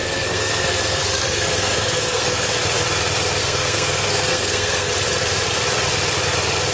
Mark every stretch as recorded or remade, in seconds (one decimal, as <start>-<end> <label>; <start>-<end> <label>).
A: 0.0-2.5 remade; 2.5-3.4 recorded; 3.4-4.9 remade; 4.9-6.7 recorded